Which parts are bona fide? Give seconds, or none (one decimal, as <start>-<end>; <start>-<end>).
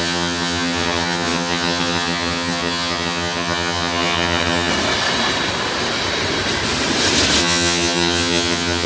4.7-7.4